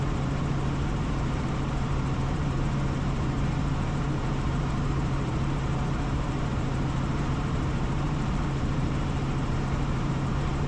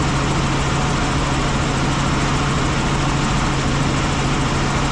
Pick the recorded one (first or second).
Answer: second